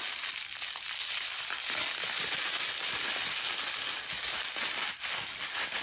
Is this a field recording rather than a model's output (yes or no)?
yes